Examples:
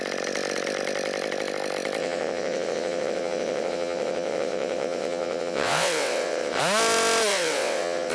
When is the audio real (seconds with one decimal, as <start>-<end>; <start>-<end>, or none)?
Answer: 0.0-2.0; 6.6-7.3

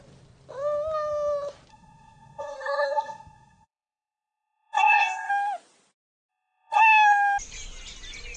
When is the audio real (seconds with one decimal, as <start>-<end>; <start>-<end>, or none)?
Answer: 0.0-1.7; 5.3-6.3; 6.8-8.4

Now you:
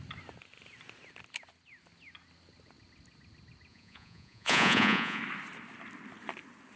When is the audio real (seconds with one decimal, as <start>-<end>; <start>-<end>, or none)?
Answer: 0.0-3.7; 5.2-6.8

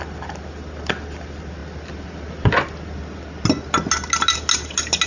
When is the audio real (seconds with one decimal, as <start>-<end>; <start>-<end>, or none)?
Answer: 0.0-5.1

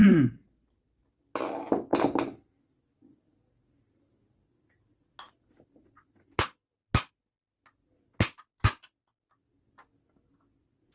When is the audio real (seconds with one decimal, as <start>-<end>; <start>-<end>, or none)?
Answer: 1.0-10.9

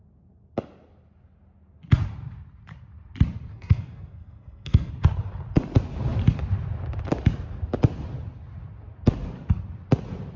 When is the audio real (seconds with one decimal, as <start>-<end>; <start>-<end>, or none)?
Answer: 0.0-3.5; 4.9-10.4

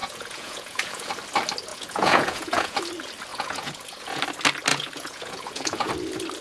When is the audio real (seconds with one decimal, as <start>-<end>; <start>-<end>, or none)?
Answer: 1.1-1.7; 2.8-3.3; 4.2-4.7; 5.9-6.4

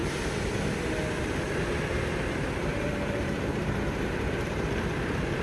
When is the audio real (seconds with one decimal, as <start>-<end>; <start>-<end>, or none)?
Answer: 0.0-2.7